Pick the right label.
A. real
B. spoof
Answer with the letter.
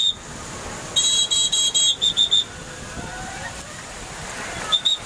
A